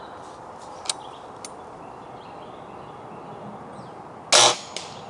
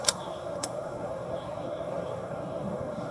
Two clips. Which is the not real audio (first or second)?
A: second